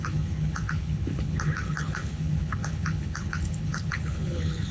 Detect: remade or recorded remade